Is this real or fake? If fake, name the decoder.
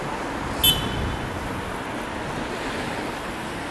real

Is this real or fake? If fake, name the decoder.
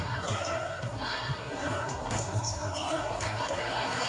fake, codec, SNAC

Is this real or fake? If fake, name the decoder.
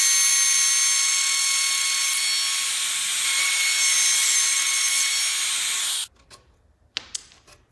real